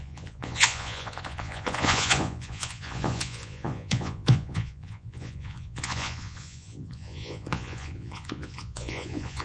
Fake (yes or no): yes